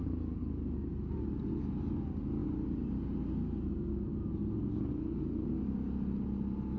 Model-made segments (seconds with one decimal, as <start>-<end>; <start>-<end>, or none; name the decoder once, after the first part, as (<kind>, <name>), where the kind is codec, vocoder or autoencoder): none